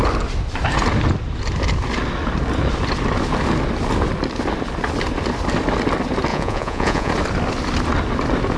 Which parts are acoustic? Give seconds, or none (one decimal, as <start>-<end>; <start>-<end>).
0.0-6.3; 7.1-8.6